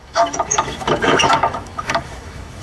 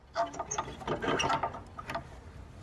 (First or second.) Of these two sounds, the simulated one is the first